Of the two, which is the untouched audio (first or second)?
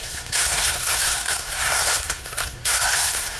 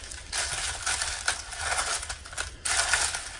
second